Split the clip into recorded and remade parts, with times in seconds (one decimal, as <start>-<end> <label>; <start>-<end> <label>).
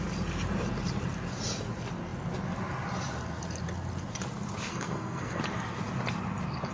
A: 0.0-4.7 recorded; 4.7-5.4 remade; 5.4-6.7 recorded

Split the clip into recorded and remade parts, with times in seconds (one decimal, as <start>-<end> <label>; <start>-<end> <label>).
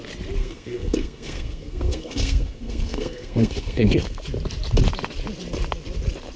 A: 0.0-0.4 recorded; 0.4-4.2 remade; 4.2-6.4 recorded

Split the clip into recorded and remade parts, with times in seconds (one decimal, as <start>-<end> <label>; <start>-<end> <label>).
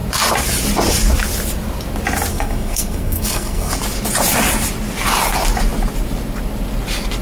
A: 0.0-2.3 recorded; 2.3-3.7 remade; 3.7-7.2 recorded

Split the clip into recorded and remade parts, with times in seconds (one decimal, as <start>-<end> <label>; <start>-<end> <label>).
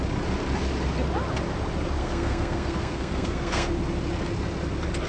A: 0.0-2.0 recorded; 2.0-3.7 remade; 3.7-5.1 recorded